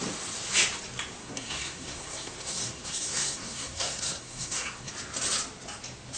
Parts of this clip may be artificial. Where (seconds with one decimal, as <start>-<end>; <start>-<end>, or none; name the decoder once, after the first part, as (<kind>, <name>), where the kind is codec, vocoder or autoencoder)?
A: 1.2-4.9 (codec, SNAC)